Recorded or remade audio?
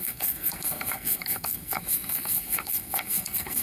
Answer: remade